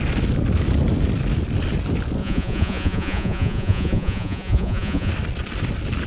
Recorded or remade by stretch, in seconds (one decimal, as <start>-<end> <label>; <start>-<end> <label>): 0.0-2.2 recorded; 2.2-5.1 remade; 5.1-6.1 recorded